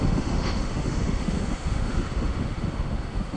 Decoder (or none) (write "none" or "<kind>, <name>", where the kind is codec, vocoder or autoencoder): autoencoder, DAC-VAE